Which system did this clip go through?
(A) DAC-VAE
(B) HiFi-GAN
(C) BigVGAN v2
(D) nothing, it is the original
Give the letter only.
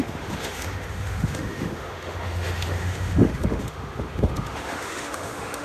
A